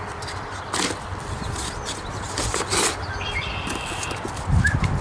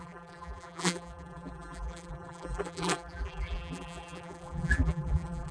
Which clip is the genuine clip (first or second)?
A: first